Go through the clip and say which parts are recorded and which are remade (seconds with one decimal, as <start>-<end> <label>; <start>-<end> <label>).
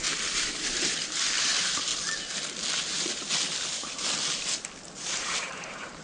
0.0-1.9 remade; 1.9-5.0 recorded; 5.0-6.0 remade